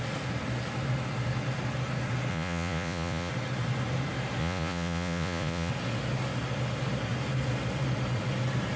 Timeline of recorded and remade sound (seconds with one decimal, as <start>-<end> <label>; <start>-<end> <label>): 0.0-2.3 recorded; 2.3-3.3 remade; 3.3-4.4 recorded; 4.4-5.7 remade; 5.7-8.8 recorded